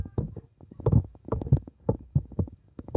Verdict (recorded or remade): remade